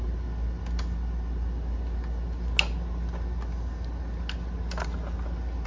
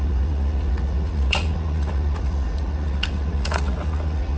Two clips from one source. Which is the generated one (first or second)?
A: second